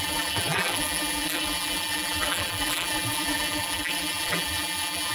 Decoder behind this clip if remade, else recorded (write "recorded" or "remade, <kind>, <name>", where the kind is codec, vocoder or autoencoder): remade, vocoder, BigVGAN v2